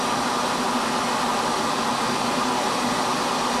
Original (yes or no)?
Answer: yes